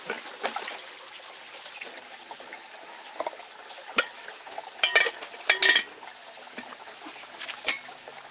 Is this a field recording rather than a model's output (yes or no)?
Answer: yes